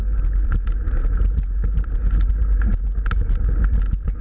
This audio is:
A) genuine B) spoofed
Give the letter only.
A